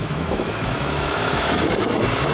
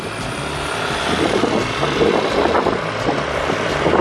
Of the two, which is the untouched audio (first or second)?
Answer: second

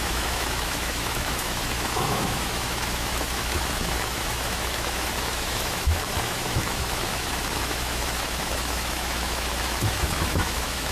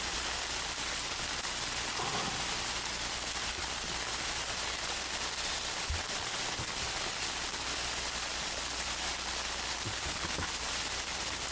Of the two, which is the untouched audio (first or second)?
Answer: second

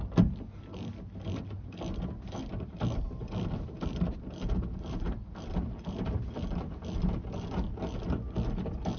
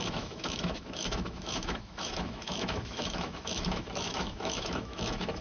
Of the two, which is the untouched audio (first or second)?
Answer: first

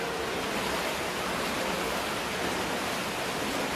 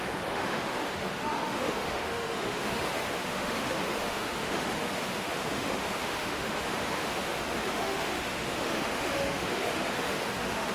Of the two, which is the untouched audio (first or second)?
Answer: first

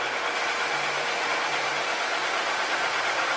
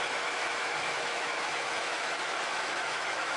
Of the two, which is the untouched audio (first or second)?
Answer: first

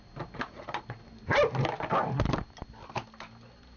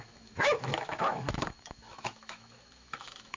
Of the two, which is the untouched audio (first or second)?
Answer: first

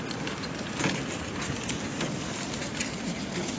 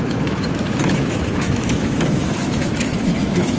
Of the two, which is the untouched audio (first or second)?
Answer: first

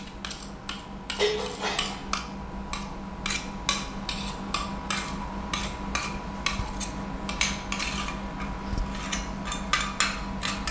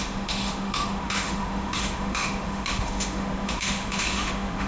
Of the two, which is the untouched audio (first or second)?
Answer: first